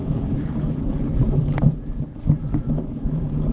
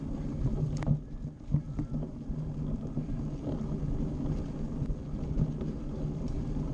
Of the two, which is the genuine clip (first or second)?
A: second